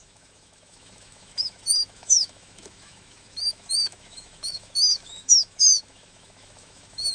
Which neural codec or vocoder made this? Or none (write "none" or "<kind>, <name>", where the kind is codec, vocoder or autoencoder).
autoencoder, DAC-VAE